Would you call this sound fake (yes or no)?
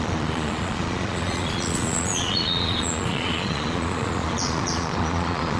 yes